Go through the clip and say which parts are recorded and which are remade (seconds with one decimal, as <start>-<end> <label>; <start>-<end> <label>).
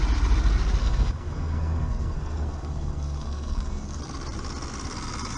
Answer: 0.0-0.8 recorded; 0.8-4.0 remade; 4.0-5.4 recorded